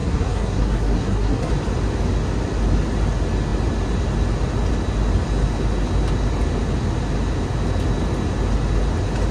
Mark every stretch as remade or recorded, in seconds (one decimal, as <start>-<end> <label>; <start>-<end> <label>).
0.0-1.5 remade; 1.5-9.3 recorded